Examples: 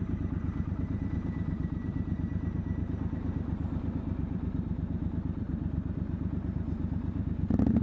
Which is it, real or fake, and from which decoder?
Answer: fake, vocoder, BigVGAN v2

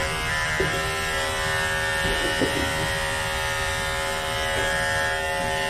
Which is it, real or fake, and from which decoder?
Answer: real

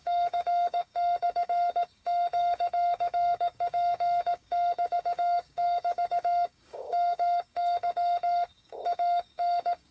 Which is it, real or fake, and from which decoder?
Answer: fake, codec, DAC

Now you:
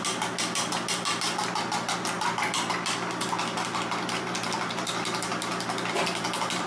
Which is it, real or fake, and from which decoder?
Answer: real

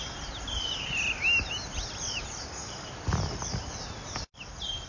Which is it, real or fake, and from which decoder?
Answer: real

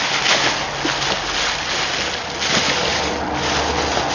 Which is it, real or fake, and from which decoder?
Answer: real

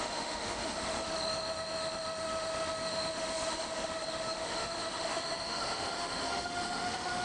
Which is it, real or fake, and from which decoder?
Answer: fake, autoencoder, DAC-VAE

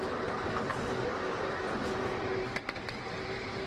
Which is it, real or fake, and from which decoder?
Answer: real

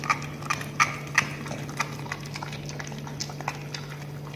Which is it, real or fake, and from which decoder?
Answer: real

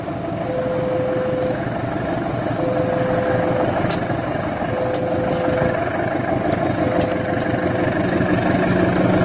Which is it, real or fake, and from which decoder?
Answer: real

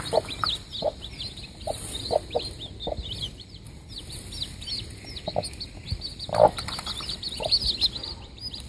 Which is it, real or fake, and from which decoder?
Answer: real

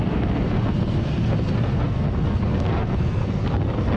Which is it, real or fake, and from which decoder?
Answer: fake, codec, SNAC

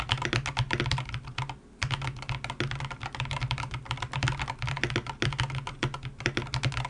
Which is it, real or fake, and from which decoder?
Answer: real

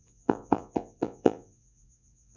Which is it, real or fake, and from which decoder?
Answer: fake, vocoder, Vocos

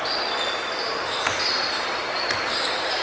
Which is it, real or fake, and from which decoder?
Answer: real